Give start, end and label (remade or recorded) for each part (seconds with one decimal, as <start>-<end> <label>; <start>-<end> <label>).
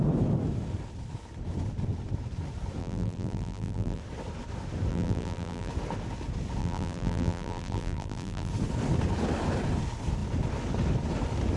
0.0-2.8 recorded; 2.8-4.0 remade; 4.0-4.9 recorded; 4.9-5.7 remade; 5.7-6.6 recorded; 6.6-8.5 remade; 8.5-11.6 recorded